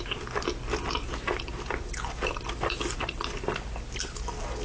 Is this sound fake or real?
real